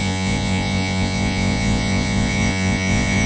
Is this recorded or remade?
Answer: remade